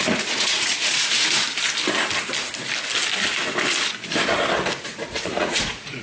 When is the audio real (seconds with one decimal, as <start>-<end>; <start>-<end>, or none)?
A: 1.4-4.8